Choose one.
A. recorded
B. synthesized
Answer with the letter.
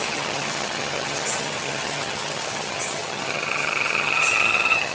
B